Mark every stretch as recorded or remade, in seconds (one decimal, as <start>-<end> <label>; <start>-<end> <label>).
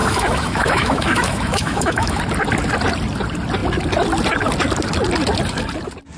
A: 0.0-2.2 remade; 2.2-6.2 recorded